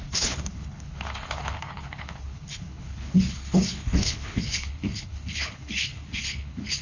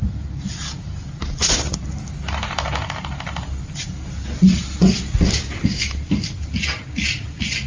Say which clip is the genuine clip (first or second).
second